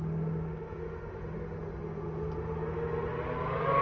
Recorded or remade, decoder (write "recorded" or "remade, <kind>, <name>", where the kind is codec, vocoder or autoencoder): recorded